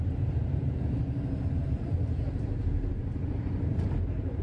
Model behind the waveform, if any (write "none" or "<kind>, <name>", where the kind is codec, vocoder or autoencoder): vocoder, BigVGAN v2